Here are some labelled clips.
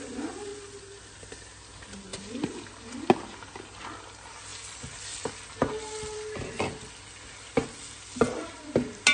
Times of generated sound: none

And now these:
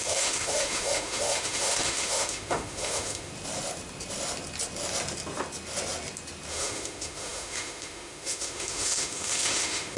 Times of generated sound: 0.0-3.3 (autoencoder, DAC-VAE); 6.5-10.0

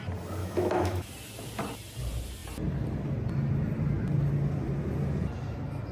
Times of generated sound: 0.4-1.1 (autoencoder, DAC-VAE)

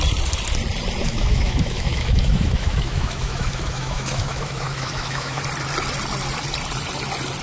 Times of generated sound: 1.0-5.4 (autoencoder, DAC-VAE)

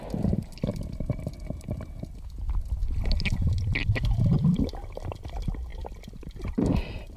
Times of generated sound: none

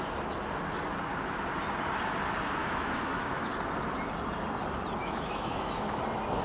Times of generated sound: 2.6-3.5 (autoencoder, DAC-VAE); 5.0-6.0

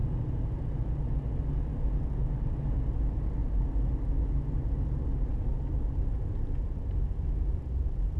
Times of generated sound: none

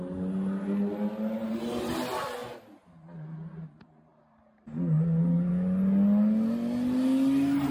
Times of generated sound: none